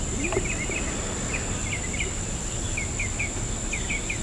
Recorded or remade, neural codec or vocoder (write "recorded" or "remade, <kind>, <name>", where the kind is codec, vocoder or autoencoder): recorded